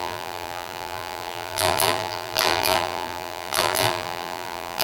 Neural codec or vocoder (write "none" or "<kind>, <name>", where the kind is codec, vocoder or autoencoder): vocoder, BigVGAN v2